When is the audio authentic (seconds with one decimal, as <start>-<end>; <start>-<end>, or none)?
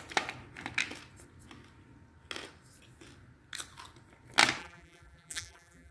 0.0-4.6